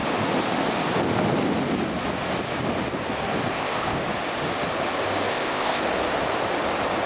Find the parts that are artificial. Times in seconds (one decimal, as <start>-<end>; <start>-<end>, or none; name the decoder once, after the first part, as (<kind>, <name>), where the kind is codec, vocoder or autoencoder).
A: 3.5-4.0 (codec, ZipCodec); 5.3-5.8